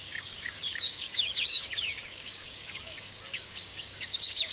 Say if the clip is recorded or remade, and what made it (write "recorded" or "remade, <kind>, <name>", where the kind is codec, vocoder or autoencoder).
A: remade, codec, DAC